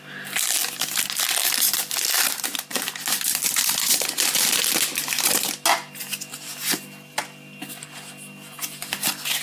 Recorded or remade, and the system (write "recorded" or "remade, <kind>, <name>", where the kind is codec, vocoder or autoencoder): recorded